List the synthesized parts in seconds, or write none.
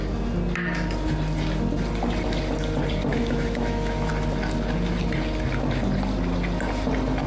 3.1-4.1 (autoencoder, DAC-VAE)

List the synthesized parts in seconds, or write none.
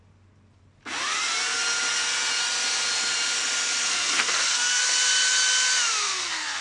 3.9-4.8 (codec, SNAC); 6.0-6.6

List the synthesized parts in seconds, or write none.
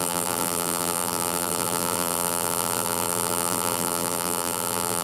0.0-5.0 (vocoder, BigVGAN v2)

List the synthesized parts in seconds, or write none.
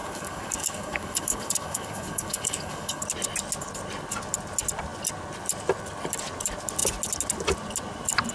0.0-3.0 (codec, DAC)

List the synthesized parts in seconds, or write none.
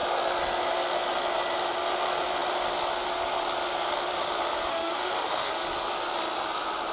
4.7-5.5 (autoencoder, DAC-VAE)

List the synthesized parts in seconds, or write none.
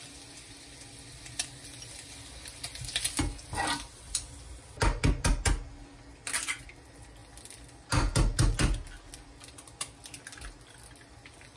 none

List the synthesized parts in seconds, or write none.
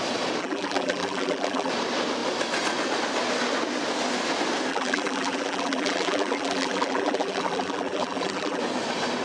0.4-1.7 (vocoder, BigVGAN v2); 4.7-8.6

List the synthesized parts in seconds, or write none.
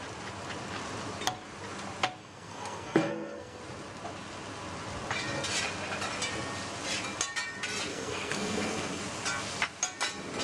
2.2-3.6 (codec, SNAC); 7.9-9.0